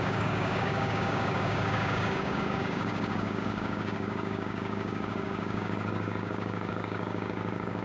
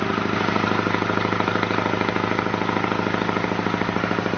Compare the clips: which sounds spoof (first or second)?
first